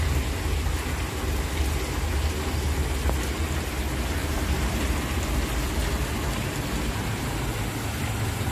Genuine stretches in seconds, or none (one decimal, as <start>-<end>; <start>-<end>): 0.0-4.2; 4.8-8.5